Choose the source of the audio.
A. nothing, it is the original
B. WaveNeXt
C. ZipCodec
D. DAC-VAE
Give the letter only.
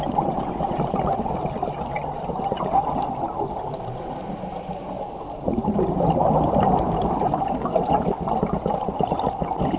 A